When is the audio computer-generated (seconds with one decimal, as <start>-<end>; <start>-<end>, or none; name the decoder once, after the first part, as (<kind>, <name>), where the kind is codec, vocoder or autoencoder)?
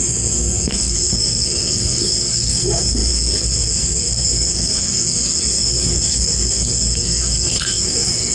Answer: 0.0-8.3 (codec, SNAC)